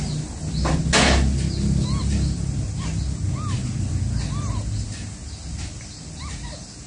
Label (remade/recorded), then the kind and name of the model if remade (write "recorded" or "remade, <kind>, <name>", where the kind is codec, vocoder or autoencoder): recorded